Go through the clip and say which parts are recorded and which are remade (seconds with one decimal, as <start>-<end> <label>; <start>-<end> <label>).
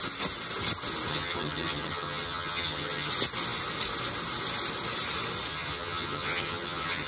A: 0.0-1.1 recorded; 1.1-3.1 remade; 3.1-5.5 recorded; 5.5-7.1 remade